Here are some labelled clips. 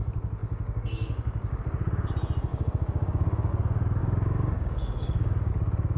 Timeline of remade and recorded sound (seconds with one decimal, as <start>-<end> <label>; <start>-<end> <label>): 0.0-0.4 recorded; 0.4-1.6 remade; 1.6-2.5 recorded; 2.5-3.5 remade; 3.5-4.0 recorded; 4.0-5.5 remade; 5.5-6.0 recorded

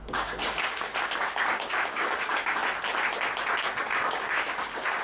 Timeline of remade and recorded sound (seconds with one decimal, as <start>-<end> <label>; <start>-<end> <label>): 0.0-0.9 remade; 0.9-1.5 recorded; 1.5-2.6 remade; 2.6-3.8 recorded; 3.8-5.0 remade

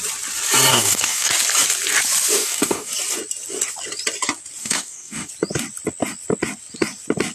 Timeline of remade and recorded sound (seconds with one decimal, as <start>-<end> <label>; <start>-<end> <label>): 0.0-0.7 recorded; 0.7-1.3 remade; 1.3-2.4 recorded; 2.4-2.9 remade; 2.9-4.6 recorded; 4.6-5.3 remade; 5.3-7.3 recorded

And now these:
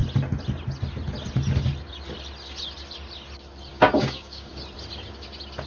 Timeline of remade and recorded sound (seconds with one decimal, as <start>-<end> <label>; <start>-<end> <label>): 0.0-3.7 recorded; 3.7-4.5 remade; 4.5-5.7 recorded

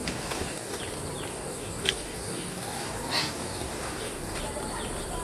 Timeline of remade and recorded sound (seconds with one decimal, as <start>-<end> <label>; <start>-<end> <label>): 0.0-0.8 remade; 0.8-1.3 recorded; 1.3-4.4 remade; 4.4-5.2 recorded

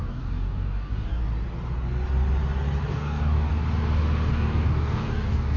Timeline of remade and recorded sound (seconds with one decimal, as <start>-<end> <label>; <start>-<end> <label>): 0.0-1.2 remade; 1.2-2.9 recorded; 2.9-3.5 remade; 3.5-4.3 recorded; 4.3-5.6 remade

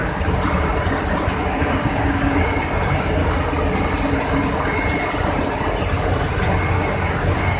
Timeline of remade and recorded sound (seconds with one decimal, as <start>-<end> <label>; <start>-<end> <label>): 0.0-1.4 recorded; 1.4-3.2 remade; 3.2-6.7 recorded; 6.7-7.6 remade